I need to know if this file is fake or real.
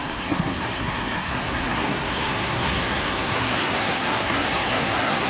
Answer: fake